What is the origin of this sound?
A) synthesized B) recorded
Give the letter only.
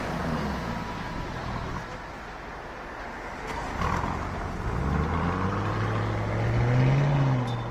B